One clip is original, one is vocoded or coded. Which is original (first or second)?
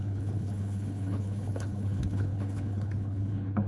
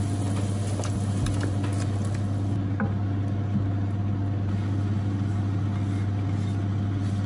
second